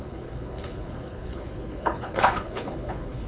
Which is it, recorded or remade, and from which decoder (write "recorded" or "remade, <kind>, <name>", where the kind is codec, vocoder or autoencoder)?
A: remade, codec, HILCodec